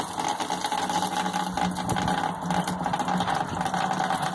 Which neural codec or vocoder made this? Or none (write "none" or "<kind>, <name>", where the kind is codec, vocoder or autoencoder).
none